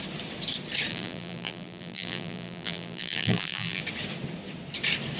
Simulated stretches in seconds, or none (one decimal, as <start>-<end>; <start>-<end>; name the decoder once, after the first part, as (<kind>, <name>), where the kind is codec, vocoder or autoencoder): 0.9-3.8 (vocoder, BigVGAN v2)